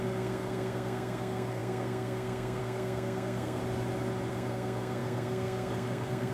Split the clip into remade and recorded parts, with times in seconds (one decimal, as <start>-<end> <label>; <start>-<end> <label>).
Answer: 0.0-3.6 remade; 3.6-4.3 recorded; 4.3-6.3 remade